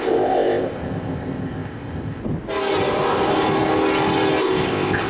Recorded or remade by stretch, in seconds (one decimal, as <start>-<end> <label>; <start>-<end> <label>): 0.0-2.2 remade; 2.2-4.4 recorded; 4.4-5.1 remade